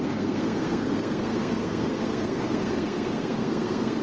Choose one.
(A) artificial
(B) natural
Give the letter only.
A